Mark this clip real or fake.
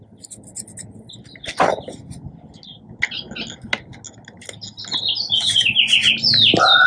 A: real